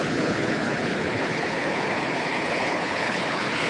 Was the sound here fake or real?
fake